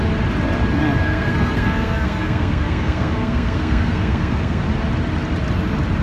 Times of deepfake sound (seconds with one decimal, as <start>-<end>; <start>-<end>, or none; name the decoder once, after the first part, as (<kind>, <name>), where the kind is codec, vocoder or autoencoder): 1.0-4.6 (codec, SNAC)